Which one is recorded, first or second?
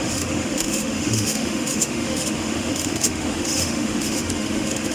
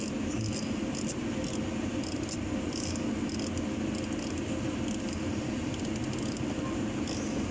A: second